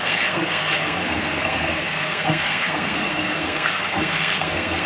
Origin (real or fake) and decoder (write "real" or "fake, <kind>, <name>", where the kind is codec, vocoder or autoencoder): fake, codec, SNAC